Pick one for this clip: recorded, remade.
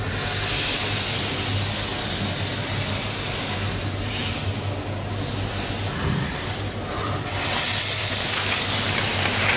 recorded